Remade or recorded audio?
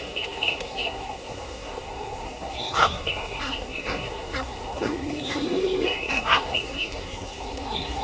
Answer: remade